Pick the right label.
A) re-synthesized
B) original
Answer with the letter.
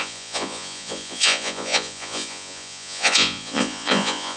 A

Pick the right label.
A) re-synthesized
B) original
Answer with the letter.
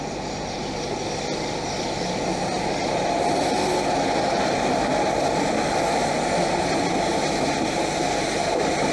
B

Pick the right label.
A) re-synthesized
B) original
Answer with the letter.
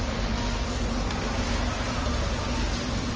B